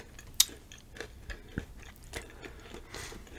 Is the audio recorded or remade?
recorded